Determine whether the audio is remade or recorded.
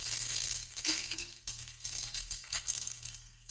remade